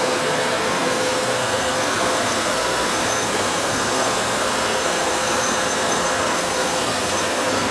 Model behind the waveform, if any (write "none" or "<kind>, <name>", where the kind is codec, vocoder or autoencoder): codec, SNAC